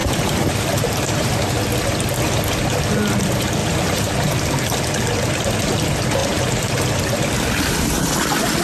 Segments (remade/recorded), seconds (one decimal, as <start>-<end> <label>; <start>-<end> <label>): 0.0-1.6 remade; 1.6-3.6 recorded; 3.6-4.3 remade; 4.3-6.2 recorded; 6.2-7.2 remade; 7.2-8.6 recorded

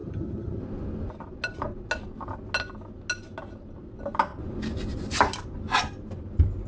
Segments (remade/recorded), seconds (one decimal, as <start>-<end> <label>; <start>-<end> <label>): 0.0-0.6 remade; 0.6-6.7 recorded

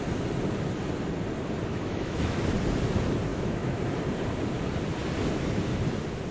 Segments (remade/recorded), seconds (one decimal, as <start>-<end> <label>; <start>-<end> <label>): 0.0-1.7 recorded; 1.7-2.4 remade; 2.4-3.3 recorded; 3.3-3.8 remade; 3.8-6.3 recorded

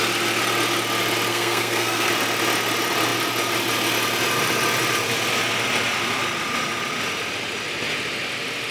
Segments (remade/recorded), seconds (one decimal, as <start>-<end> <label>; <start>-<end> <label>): 0.0-1.3 recorded; 1.3-2.1 remade; 2.1-8.7 recorded

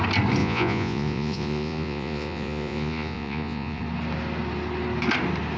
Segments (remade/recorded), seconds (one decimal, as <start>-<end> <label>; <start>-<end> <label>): 0.0-0.4 recorded; 0.4-3.8 remade; 3.8-5.6 recorded

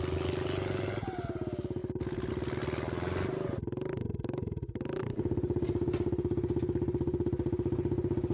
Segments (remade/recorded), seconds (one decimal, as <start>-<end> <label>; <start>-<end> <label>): 0.0-8.3 recorded

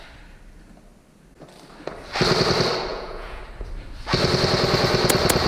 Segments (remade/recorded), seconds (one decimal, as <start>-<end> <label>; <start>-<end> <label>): 0.0-2.9 recorded; 2.9-3.4 remade; 3.4-5.5 recorded